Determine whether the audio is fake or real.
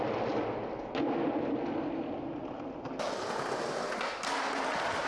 real